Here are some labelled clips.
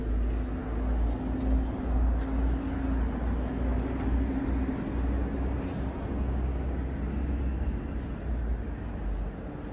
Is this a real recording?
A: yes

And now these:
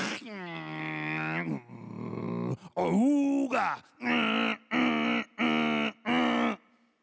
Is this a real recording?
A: yes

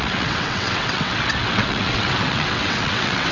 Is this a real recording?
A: no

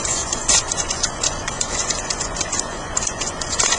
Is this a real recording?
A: no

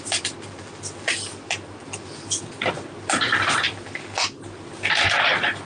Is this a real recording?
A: yes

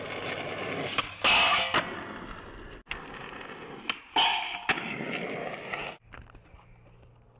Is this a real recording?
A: yes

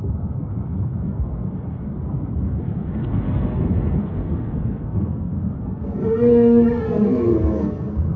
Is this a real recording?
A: no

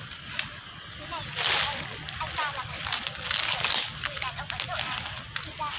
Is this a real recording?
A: yes